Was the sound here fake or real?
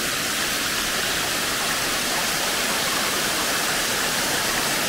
fake